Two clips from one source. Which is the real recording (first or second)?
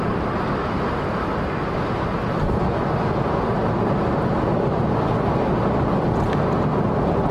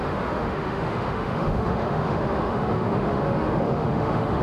first